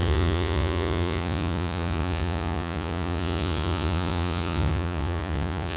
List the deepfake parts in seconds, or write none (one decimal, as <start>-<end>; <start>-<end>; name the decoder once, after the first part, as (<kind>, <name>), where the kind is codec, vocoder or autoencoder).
0.0-5.8 (vocoder, Vocos)